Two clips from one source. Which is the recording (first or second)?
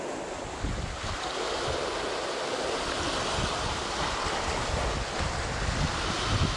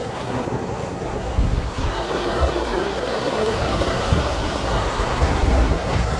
first